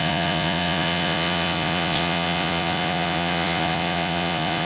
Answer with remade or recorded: remade